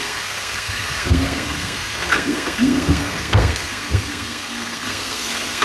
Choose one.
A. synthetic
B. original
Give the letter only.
A